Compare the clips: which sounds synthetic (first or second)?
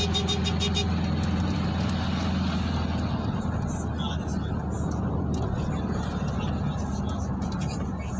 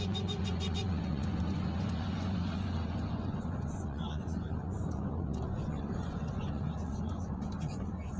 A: second